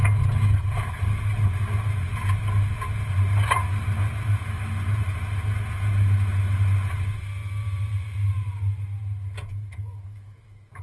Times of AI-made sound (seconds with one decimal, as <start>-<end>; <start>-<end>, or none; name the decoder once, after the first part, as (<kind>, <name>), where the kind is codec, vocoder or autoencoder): 9.5-10.8 (autoencoder, DAC-VAE)